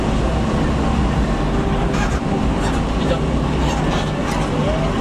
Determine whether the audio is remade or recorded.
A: recorded